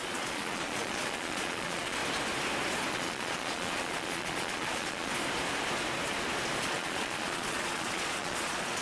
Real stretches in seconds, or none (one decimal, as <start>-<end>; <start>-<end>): 2.0-2.9; 5.1-6.6